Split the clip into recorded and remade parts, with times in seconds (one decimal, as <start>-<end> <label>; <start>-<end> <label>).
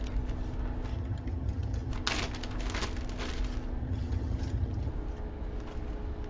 0.0-0.9 recorded; 0.9-1.9 remade; 1.9-3.8 recorded; 3.8-4.9 remade; 4.9-6.3 recorded